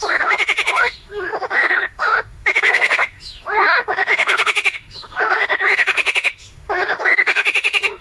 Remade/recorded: remade